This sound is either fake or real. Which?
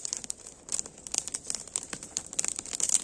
fake